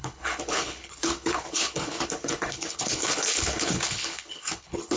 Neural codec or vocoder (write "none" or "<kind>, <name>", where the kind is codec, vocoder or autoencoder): codec, HILCodec